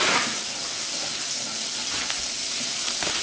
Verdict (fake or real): real